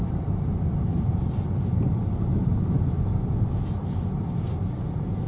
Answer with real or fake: real